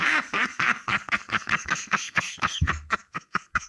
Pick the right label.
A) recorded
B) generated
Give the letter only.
B